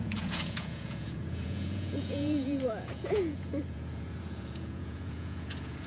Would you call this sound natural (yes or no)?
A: no